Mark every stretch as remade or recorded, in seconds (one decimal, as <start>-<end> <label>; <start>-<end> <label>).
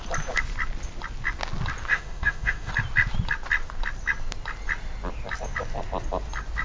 0.0-1.9 recorded; 1.9-2.7 remade; 2.7-6.6 recorded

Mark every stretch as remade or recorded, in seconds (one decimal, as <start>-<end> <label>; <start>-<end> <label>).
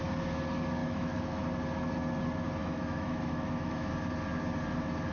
0.0-0.8 recorded; 0.8-1.5 remade; 1.5-2.6 recorded; 2.6-3.9 remade; 3.9-5.1 recorded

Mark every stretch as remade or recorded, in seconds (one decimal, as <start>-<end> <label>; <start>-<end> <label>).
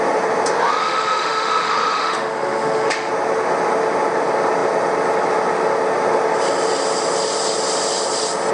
0.0-0.8 recorded; 0.8-3.1 remade; 3.1-8.5 recorded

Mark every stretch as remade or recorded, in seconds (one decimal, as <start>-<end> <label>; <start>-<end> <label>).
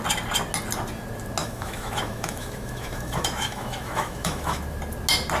0.0-1.4 recorded; 1.4-4.6 remade; 4.6-5.4 recorded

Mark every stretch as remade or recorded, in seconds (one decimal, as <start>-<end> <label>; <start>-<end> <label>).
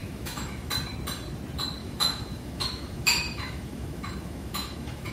0.0-0.7 remade; 0.7-1.8 recorded; 1.8-5.1 remade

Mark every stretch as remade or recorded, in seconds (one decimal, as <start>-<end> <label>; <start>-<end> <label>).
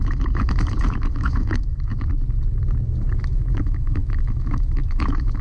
0.0-1.9 remade; 1.9-3.2 recorded; 3.2-5.4 remade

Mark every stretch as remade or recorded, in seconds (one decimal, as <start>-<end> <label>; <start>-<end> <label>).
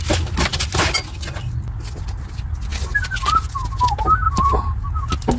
0.0-5.4 recorded